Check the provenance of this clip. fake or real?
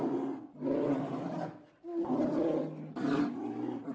real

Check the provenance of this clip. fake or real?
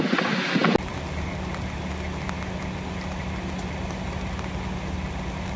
real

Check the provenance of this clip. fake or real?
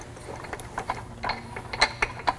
real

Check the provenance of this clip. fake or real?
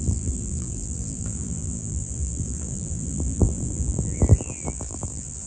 fake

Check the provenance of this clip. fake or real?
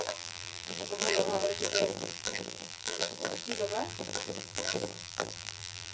fake